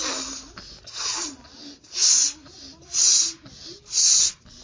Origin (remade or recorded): recorded